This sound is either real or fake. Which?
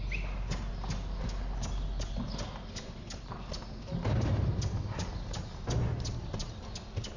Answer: real